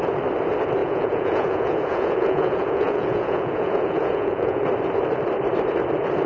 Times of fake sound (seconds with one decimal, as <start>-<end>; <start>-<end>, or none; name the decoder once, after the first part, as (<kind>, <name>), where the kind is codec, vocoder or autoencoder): 0.8-4.6 (vocoder, Vocos)